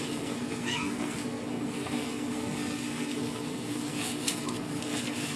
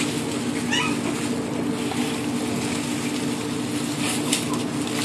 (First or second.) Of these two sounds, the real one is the second